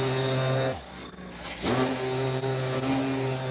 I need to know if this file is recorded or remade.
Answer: recorded